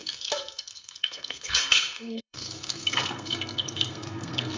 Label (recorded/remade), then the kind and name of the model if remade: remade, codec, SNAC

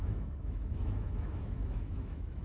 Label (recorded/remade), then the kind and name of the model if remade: remade, autoencoder, DAC-VAE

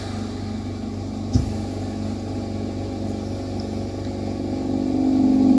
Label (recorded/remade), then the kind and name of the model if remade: recorded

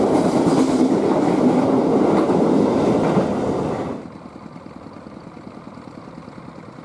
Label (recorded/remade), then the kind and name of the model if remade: recorded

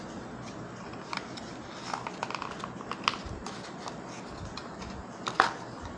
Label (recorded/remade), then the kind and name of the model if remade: recorded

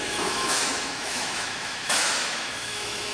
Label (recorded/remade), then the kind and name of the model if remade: remade, autoencoder, DAC-VAE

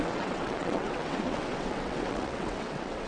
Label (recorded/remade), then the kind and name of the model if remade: remade, vocoder, WaveNeXt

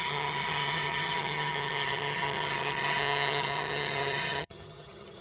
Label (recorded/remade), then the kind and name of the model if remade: remade, vocoder, HiFi-GAN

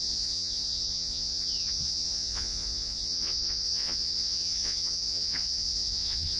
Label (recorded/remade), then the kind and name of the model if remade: remade, vocoder, Vocos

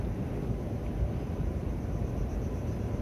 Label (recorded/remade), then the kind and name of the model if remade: recorded